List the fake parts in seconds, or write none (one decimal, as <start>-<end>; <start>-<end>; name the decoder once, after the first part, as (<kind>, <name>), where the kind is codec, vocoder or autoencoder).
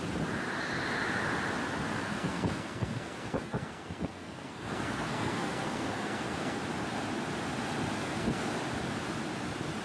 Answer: 1.9-6.6 (codec, SNAC); 8.0-8.5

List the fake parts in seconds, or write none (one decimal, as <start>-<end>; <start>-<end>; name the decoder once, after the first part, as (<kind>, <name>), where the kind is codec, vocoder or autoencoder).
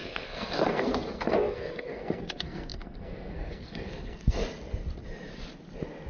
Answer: 0.0-4.4 (codec, SNAC)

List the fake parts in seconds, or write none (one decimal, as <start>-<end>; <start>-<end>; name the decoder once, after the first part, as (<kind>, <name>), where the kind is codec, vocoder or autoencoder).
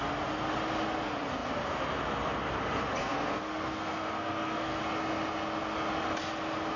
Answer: 3.0-4.8 (codec, SNAC)